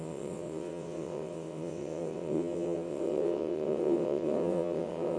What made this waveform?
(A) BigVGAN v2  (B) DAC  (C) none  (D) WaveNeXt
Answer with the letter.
D